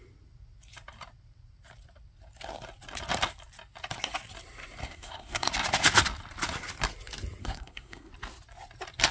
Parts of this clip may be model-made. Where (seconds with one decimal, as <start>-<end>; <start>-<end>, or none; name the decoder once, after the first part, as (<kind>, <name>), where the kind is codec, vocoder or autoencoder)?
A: 4.8-5.5 (codec, SNAC); 7.4-8.1